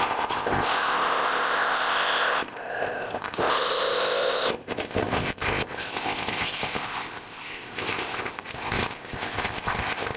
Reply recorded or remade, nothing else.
remade